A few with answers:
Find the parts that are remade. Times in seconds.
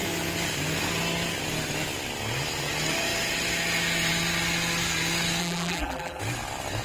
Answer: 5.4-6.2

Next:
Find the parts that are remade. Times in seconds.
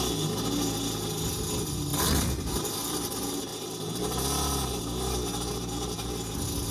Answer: none